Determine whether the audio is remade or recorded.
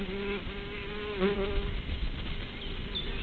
recorded